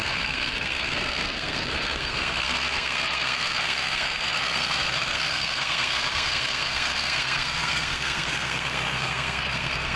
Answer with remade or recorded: remade